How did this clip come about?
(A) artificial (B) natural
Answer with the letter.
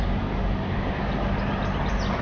B